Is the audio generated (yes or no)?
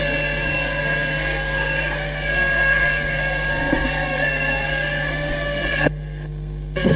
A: yes